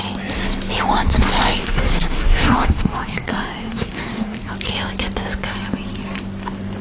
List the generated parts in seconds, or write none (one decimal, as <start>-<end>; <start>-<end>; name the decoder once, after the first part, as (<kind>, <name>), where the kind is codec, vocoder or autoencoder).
1.6-4.5 (codec, SNAC)